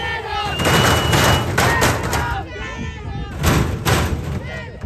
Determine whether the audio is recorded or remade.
recorded